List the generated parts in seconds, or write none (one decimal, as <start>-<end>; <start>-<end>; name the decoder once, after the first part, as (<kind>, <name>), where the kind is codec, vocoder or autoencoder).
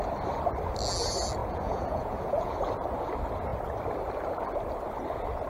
1.4-2.5 (vocoder, Vocos)